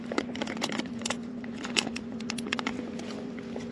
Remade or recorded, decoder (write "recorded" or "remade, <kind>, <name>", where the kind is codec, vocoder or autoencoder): remade, vocoder, Vocos